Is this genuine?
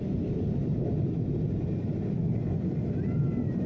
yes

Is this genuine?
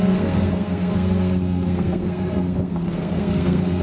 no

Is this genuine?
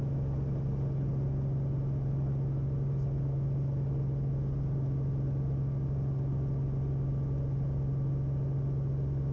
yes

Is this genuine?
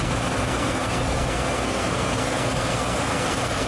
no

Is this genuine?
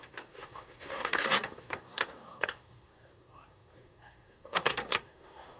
no